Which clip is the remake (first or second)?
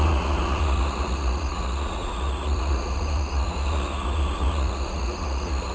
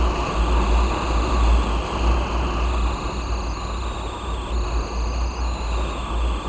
first